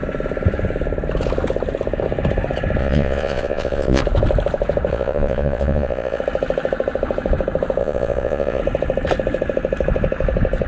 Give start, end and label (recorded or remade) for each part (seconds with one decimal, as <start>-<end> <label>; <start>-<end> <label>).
0.0-2.8 recorded; 2.8-4.0 remade; 4.0-4.9 recorded; 4.9-6.2 remade; 6.2-7.8 recorded; 7.8-8.6 remade; 8.6-10.7 recorded